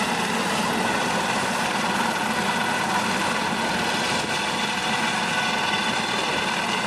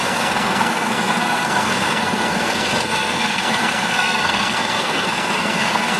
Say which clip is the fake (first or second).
second